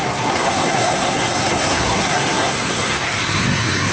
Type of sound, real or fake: fake